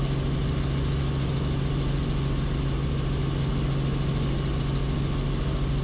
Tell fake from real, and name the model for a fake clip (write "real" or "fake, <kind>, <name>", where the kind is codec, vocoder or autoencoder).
real